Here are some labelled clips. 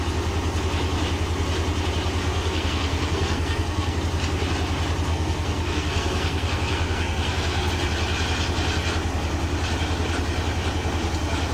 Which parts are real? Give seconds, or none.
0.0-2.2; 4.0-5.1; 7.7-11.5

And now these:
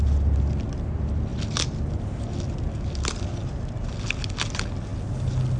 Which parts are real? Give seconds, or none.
0.0-5.6

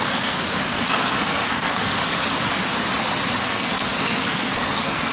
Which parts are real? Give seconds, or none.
2.0-3.4

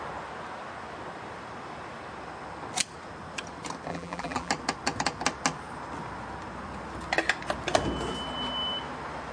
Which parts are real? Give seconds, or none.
0.0-3.9; 4.5-9.3